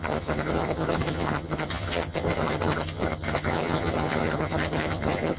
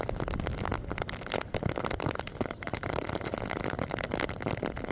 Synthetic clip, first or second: first